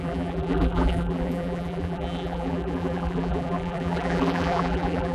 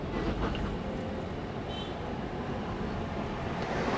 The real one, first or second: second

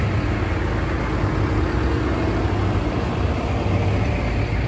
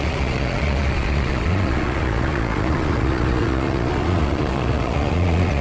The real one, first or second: first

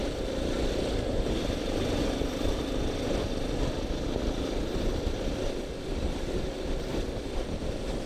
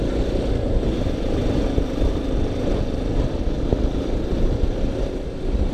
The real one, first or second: second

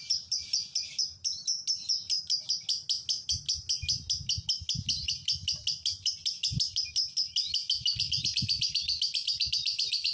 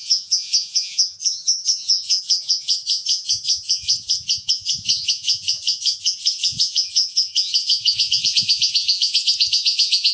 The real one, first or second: first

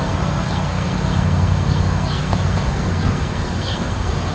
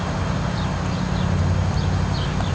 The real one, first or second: second